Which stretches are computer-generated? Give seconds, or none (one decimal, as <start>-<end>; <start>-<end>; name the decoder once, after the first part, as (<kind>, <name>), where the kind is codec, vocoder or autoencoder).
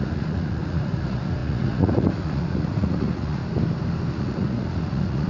0.0-3.4 (vocoder, Vocos); 4.1-5.3